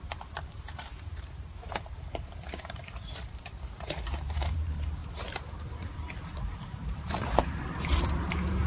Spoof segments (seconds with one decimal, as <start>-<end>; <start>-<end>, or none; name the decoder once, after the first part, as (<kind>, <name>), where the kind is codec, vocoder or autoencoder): 0.0-8.7 (vocoder, BigVGAN v2)